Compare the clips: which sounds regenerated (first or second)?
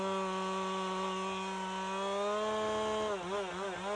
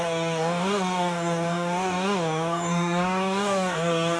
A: second